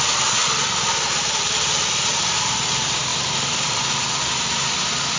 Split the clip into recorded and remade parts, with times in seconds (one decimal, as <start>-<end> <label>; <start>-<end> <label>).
0.0-0.4 recorded; 0.4-2.7 remade; 2.7-3.1 recorded; 3.1-4.2 remade; 4.2-5.2 recorded